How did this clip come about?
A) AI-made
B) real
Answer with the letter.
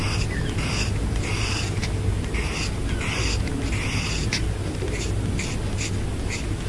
B